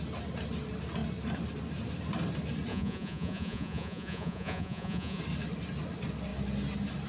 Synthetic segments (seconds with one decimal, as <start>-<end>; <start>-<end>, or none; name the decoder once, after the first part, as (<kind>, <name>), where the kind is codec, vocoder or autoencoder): 2.7-5.2 (vocoder, Vocos)